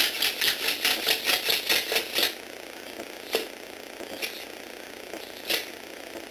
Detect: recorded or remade recorded